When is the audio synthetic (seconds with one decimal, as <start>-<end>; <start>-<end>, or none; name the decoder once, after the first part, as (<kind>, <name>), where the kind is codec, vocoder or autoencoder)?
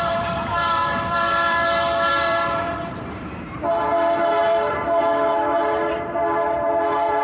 0.0-7.2 (vocoder, BigVGAN v2)